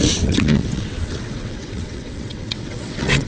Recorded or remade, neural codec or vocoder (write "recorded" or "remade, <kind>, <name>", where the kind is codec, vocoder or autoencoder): remade, vocoder, WaveNeXt